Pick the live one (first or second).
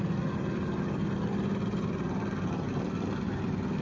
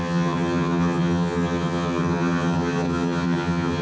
first